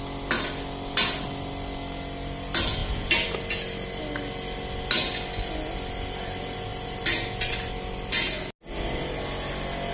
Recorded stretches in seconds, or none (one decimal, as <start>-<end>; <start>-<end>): 0.0-9.9